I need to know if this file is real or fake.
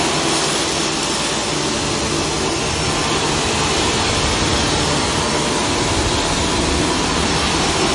real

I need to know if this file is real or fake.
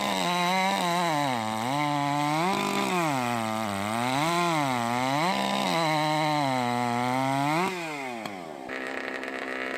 real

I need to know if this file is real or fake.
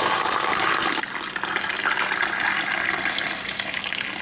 real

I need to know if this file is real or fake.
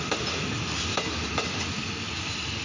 real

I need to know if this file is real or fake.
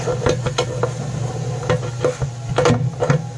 real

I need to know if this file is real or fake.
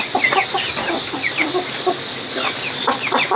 real